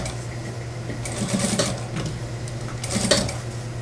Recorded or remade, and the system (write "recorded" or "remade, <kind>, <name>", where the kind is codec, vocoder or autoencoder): recorded